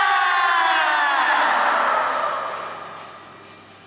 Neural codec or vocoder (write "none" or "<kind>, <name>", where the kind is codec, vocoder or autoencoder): none